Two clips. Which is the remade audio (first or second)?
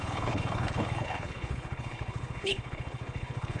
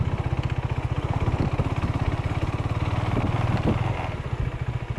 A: first